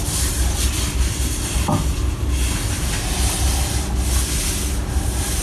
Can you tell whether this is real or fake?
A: real